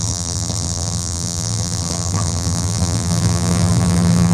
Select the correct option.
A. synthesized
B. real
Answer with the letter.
A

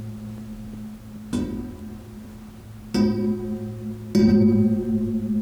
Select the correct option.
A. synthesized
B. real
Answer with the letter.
B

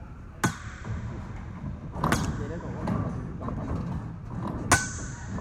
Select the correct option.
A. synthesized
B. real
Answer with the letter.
B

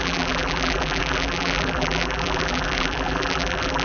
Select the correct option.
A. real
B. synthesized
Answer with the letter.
B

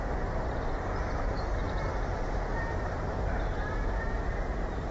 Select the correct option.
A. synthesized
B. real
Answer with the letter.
A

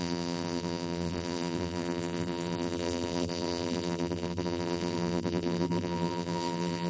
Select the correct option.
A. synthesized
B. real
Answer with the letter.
A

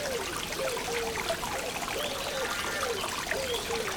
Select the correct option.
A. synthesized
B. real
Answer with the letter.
B